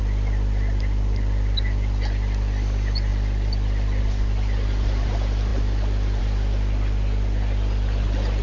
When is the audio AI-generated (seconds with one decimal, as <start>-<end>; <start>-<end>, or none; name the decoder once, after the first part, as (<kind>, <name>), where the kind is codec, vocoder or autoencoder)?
none